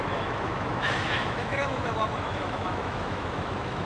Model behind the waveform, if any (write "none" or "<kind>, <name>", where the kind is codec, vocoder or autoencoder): autoencoder, DAC-VAE